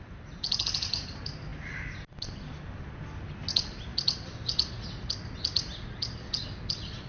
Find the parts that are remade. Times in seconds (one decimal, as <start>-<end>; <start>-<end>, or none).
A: none